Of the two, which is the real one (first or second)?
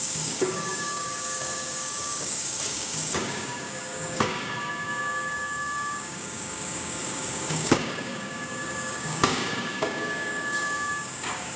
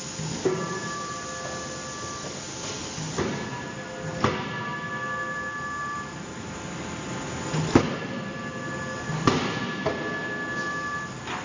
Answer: second